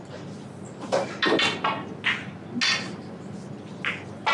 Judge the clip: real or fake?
real